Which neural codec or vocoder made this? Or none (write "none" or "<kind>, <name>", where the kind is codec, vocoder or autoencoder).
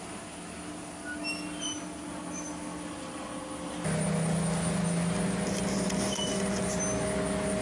none